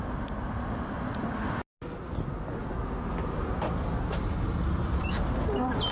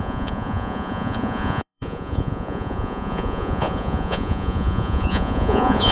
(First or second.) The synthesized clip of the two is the second